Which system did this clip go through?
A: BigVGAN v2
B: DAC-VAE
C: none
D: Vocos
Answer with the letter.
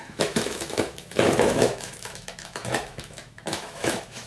B